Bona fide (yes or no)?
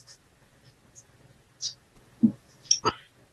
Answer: yes